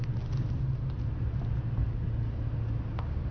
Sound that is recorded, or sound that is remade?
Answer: recorded